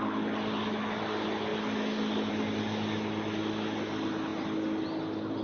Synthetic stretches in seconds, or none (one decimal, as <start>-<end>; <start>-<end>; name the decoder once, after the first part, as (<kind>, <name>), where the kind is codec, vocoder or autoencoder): none